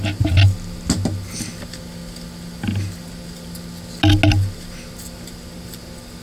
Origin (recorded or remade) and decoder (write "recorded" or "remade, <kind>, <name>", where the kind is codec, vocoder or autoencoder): recorded